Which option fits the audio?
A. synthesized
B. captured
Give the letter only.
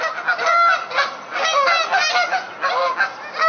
B